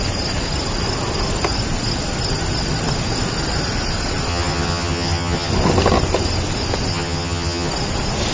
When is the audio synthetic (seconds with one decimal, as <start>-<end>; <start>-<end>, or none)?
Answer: 4.3-5.5; 6.9-7.7